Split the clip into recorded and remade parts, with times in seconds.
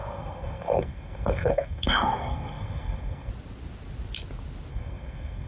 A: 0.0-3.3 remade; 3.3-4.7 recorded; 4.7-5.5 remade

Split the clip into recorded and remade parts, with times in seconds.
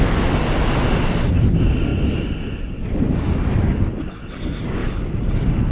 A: 0.0-5.7 recorded